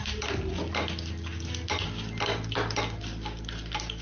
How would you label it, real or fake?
real